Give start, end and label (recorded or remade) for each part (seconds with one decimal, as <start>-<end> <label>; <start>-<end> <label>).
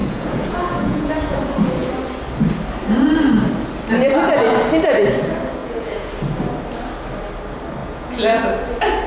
0.0-1.1 remade; 1.1-5.6 recorded; 5.6-6.1 remade; 6.1-7.8 recorded; 7.8-8.4 remade; 8.4-9.1 recorded